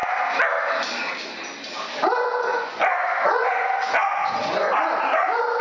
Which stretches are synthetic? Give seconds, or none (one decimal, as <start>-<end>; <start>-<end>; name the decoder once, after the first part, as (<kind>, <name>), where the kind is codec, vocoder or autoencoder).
2.5-4.7 (vocoder, Vocos)